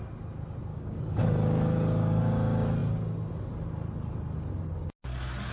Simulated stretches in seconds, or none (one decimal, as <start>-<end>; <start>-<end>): 0.7-2.2